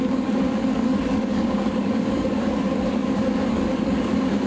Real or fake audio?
fake